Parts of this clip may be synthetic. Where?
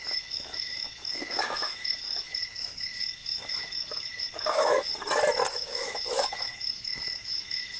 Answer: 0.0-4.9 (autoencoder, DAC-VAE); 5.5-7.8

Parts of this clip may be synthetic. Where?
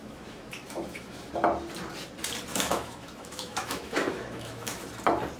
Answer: 0.0-1.3 (autoencoder, DAC-VAE); 2.5-4.8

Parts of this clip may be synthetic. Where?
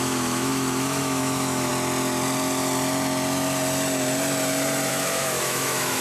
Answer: 0.0-1.7 (autoencoder, DAC-VAE); 4.9-6.0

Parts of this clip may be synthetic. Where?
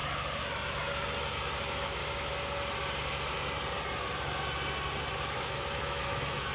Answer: 1.6-2.0 (autoencoder, DAC-VAE); 5.1-6.5